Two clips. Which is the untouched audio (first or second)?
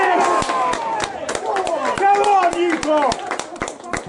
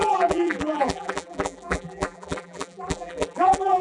first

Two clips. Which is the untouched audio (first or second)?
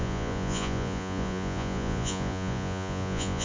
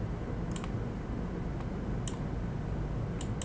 second